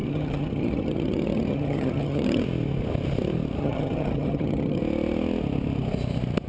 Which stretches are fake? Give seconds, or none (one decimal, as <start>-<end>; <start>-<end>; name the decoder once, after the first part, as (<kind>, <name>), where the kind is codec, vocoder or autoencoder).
0.0-2.4 (vocoder, HiFi-GAN); 3.6-4.8